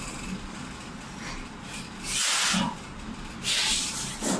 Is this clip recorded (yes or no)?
yes